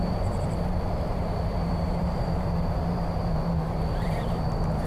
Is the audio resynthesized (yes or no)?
yes